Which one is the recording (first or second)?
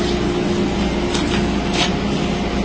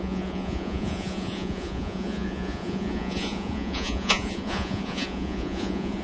first